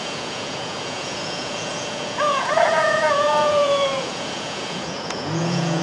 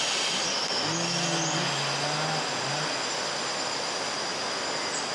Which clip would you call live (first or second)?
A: second